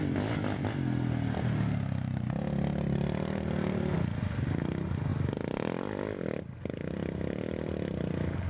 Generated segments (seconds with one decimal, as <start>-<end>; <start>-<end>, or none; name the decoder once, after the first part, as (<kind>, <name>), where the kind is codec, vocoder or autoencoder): none